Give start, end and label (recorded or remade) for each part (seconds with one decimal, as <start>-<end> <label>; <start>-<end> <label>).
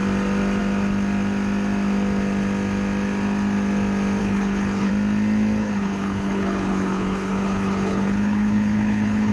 0.0-4.2 recorded; 4.2-4.9 remade; 4.9-5.6 recorded; 5.6-9.3 remade